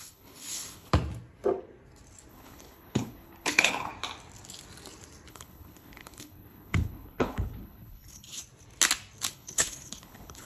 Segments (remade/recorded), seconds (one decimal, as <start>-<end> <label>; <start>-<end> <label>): 0.0-0.9 remade; 0.9-2.3 recorded; 2.3-3.9 remade; 3.9-5.3 recorded; 5.3-8.4 remade; 8.4-9.3 recorded; 9.3-10.5 remade